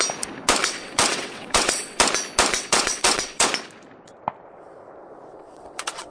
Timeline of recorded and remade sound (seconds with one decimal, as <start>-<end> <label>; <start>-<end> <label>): 0.0-0.6 recorded; 0.6-2.0 remade; 2.0-2.5 recorded; 2.5-3.5 remade; 3.5-5.3 recorded; 5.3-6.1 remade